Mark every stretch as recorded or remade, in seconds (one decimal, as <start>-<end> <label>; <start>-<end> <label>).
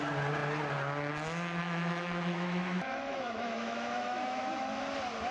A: 0.0-1.6 recorded; 1.6-4.8 remade; 4.8-5.3 recorded